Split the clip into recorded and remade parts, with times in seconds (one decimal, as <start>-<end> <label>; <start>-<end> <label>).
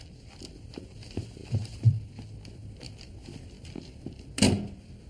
0.0-5.1 recorded